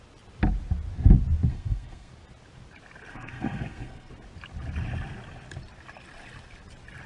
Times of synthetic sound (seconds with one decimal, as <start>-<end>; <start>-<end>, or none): 1.5-2.1; 3.1-4.1